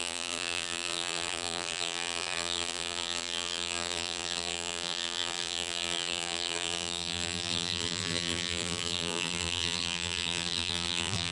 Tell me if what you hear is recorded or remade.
remade